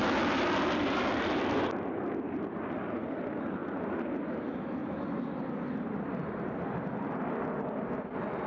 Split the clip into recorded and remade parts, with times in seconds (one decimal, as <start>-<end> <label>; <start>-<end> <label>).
0.0-8.5 recorded